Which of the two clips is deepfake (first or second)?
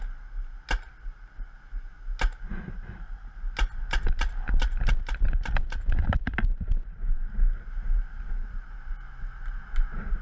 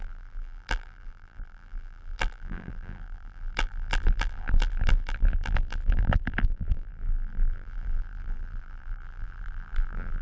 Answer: second